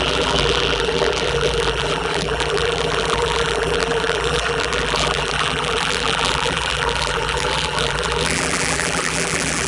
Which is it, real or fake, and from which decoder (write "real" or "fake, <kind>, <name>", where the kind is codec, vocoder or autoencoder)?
fake, vocoder, BigVGAN v2